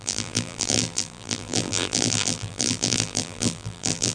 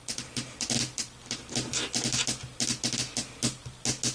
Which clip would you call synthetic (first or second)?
first